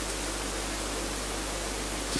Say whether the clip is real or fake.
real